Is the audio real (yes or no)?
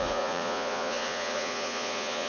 no